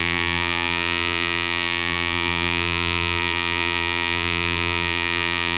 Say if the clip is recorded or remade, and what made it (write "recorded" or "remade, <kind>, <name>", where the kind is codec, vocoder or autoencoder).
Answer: remade, vocoder, BigVGAN v2